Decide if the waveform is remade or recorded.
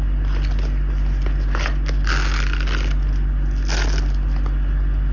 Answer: recorded